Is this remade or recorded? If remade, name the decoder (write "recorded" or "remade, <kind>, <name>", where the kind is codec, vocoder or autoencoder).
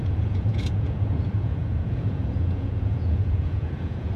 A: remade, vocoder, Vocos